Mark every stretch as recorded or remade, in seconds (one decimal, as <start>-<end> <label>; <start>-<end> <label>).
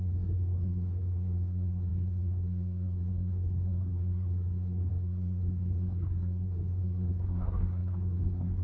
0.0-8.6 remade